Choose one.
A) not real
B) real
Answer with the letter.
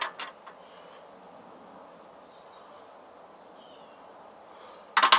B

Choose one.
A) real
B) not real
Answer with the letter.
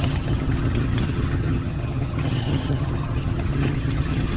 B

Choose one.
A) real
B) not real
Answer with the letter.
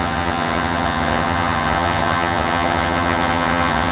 B